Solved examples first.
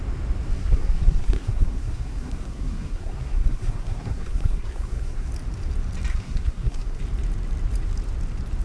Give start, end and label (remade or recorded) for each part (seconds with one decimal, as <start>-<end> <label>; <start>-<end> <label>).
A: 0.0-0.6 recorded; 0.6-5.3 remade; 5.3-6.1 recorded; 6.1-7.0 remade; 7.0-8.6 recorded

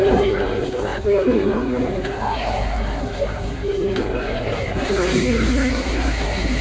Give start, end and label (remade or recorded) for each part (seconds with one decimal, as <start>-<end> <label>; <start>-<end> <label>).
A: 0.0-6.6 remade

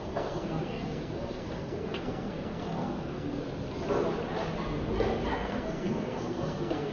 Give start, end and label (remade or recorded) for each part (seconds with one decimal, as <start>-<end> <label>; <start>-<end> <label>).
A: 0.0-3.4 remade; 3.4-5.3 recorded; 5.3-6.9 remade

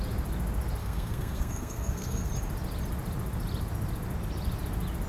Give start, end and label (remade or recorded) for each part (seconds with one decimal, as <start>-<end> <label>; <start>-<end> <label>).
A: 0.0-0.8 recorded; 0.8-2.3 remade; 2.3-5.1 recorded

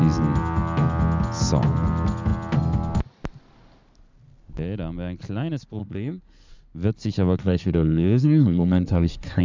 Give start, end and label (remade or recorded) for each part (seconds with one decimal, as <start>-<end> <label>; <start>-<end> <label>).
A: 0.0-5.8 recorded; 5.8-6.5 remade; 6.5-7.4 recorded; 7.4-9.4 remade

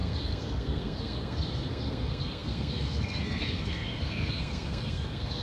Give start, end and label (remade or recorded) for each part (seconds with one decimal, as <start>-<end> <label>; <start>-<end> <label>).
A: 0.0-5.4 remade

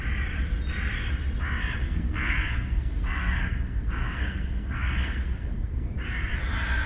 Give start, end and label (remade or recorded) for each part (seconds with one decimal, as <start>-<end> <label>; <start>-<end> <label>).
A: 0.0-1.8 recorded; 1.8-5.9 remade; 5.9-6.9 recorded

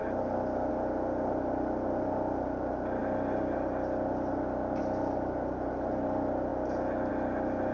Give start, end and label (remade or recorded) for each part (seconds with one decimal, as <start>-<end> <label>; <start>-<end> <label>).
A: 0.0-7.7 recorded